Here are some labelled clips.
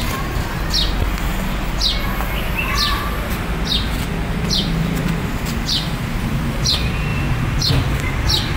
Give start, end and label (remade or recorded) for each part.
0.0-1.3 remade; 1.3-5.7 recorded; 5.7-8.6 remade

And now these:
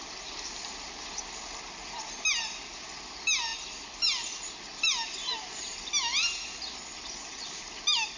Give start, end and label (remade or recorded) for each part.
0.0-8.2 recorded

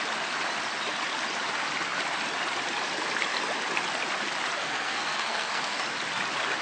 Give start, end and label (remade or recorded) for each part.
0.0-4.6 recorded; 4.6-5.8 remade; 5.8-6.6 recorded

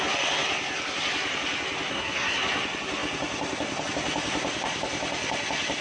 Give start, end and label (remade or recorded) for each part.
0.0-1.9 recorded; 1.9-2.4 remade; 2.4-5.8 recorded

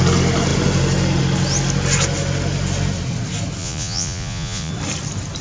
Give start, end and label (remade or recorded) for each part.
0.0-3.6 recorded; 3.6-4.7 remade; 4.7-5.4 recorded

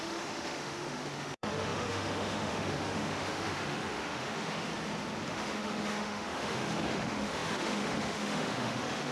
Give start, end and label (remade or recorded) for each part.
0.0-4.7 remade; 4.7-5.3 recorded; 5.3-9.1 remade

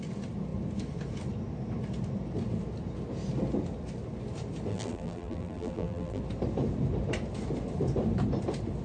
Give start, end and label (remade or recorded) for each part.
0.0-4.7 recorded; 4.7-6.2 remade; 6.2-8.8 recorded